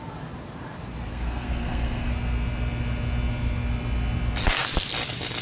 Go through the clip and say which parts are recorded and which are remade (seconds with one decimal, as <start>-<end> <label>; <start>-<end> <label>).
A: 0.0-1.1 recorded; 1.1-2.1 remade; 2.1-5.4 recorded